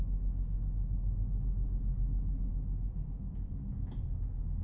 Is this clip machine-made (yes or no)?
no